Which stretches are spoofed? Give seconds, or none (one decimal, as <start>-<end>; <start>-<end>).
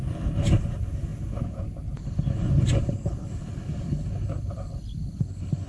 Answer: none